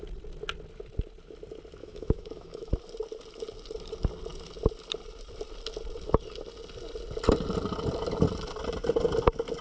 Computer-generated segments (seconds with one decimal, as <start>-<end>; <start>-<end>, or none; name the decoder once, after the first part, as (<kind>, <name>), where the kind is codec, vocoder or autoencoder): 1.8-2.7 (autoencoder, DAC-VAE)